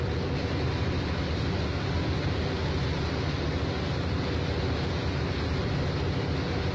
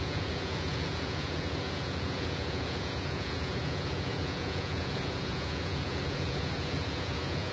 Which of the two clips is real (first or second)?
first